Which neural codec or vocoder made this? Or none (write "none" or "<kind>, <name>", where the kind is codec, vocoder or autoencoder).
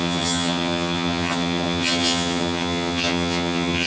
vocoder, HiFi-GAN